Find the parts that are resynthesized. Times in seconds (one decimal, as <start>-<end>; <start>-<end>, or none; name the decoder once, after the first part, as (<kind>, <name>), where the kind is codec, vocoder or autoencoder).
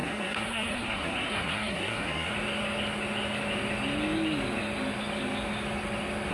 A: 0.0-2.3 (codec, SNAC)